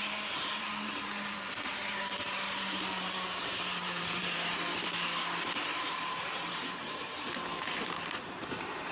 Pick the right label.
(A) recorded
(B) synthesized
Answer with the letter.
B